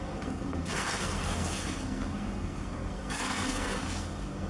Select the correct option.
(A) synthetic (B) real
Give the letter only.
A